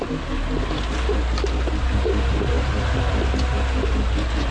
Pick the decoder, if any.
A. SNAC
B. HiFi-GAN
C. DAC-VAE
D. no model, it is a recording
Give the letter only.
D